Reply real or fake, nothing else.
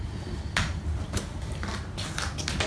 real